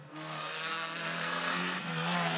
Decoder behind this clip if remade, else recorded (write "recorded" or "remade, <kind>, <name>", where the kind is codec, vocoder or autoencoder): remade, codec, SNAC